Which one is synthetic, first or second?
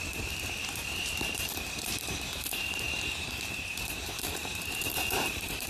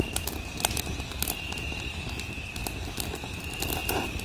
first